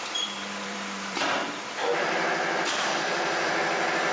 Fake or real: fake